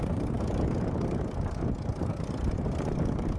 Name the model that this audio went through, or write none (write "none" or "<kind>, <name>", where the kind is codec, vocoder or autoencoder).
vocoder, BigVGAN v2